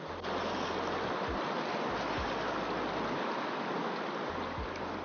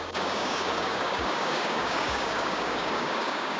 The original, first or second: first